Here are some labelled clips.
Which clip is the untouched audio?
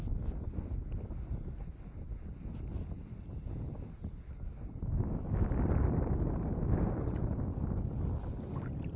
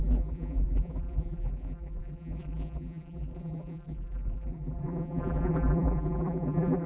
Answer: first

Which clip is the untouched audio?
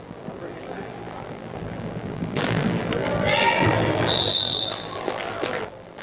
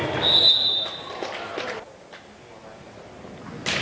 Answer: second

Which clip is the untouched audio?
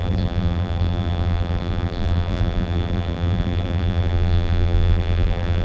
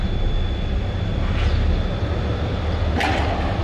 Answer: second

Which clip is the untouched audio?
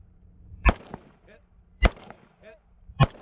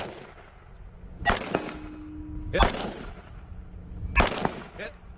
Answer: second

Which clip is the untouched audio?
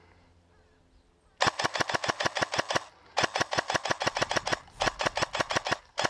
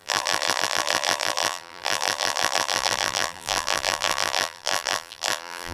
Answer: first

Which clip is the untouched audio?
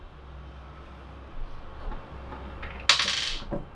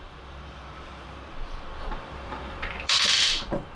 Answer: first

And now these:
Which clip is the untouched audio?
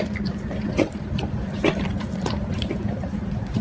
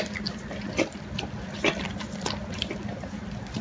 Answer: second